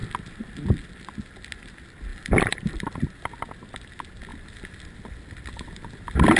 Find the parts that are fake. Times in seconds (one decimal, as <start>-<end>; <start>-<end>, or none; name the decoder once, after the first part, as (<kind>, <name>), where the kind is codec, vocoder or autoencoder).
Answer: 2.1-3.3 (vocoder, BigVGAN v2); 4.3-6.4